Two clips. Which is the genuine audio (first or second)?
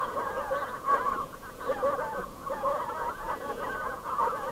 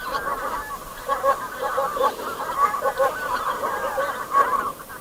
second